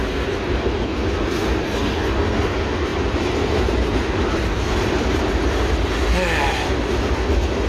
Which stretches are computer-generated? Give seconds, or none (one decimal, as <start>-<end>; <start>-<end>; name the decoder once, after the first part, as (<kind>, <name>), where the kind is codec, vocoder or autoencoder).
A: 2.9-5.2 (vocoder, BigVGAN v2)